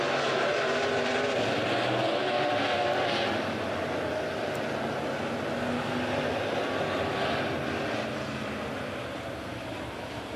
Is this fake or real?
real